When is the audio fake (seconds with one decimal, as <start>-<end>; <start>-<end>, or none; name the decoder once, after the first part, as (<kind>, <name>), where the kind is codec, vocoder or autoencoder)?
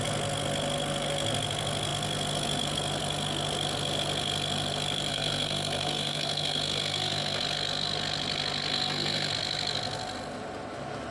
5.1-7.4 (codec, SNAC); 8.7-9.3